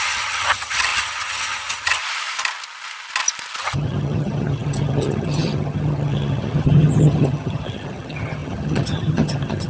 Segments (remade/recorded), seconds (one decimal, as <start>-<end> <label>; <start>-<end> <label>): 0.0-2.0 remade; 2.0-3.6 recorded; 3.6-9.7 remade